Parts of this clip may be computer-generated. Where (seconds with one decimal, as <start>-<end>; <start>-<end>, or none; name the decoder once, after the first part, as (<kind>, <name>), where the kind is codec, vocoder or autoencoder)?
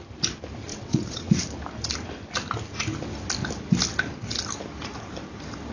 0.7-1.4 (vocoder, WaveNeXt)